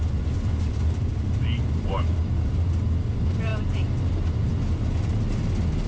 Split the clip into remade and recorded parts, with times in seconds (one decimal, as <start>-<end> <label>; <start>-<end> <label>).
0.0-5.9 recorded